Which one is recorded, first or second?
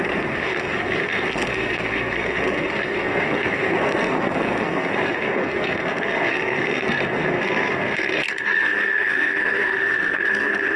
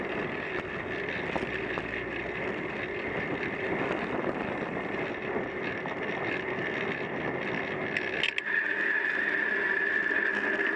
second